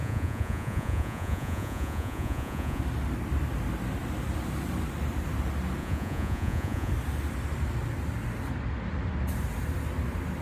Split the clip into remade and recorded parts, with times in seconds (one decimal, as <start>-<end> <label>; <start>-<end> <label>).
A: 0.0-2.8 remade; 2.8-5.8 recorded; 5.8-6.9 remade; 6.9-10.4 recorded